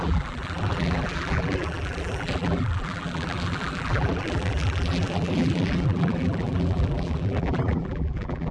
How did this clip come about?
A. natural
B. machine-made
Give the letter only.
B